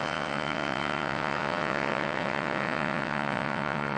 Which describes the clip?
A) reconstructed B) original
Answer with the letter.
A